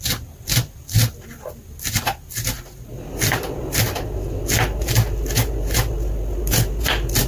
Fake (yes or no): no